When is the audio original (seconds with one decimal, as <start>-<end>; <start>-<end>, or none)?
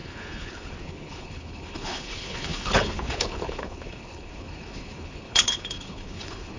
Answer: none